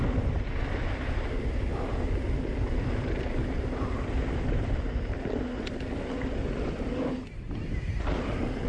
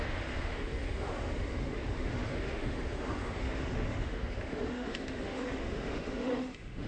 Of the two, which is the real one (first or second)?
first